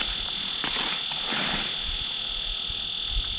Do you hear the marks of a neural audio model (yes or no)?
no